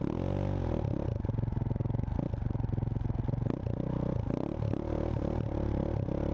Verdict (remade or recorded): recorded